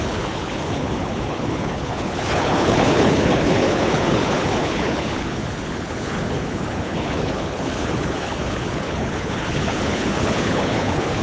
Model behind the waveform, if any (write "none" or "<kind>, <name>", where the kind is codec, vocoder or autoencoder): codec, HILCodec